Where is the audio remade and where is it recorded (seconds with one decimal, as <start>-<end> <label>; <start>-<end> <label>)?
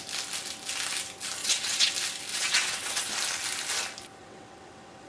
0.0-1.4 recorded; 1.4-1.9 remade; 1.9-2.3 recorded; 2.3-3.1 remade; 3.1-4.2 recorded; 4.2-5.1 remade